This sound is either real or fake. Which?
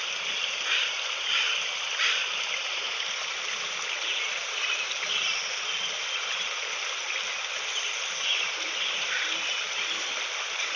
real